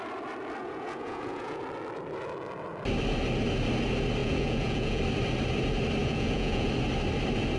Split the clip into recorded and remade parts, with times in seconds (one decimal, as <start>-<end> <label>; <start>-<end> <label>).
0.0-0.6 recorded; 0.6-1.6 remade; 1.6-4.2 recorded; 4.2-5.0 remade; 5.0-6.0 recorded; 6.0-6.7 remade; 6.7-7.6 recorded